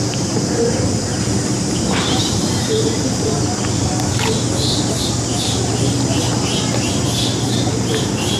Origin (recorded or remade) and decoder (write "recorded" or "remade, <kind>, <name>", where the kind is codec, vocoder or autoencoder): recorded